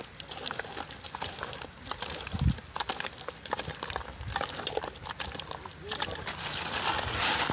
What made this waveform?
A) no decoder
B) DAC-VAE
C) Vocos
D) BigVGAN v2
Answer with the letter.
D